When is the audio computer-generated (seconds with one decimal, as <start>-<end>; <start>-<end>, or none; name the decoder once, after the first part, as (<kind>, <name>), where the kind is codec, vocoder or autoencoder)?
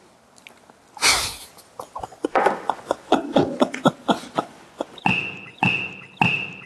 2.1-5.9 (vocoder, Vocos)